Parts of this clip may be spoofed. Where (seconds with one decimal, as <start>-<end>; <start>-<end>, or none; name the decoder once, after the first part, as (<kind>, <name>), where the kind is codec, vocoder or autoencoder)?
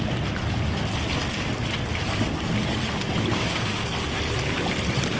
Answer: 3.3-3.9 (codec, DAC)